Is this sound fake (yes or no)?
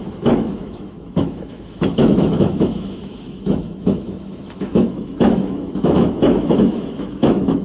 yes